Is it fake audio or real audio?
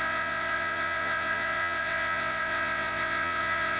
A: fake